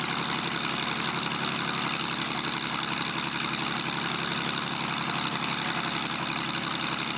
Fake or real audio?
real